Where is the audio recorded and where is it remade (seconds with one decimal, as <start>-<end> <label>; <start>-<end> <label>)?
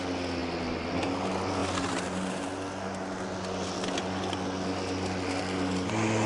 0.0-6.3 recorded